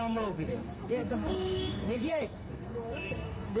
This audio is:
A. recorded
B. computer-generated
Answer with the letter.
B